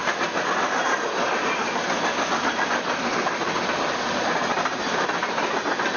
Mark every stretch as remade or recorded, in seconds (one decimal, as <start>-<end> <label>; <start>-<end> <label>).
0.0-4.5 recorded; 4.5-5.1 remade; 5.1-6.0 recorded